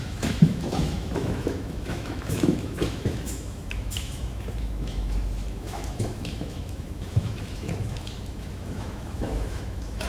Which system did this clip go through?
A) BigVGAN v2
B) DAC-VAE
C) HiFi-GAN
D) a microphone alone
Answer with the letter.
B